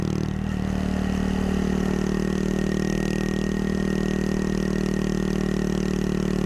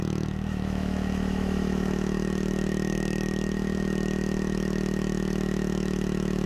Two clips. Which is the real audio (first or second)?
first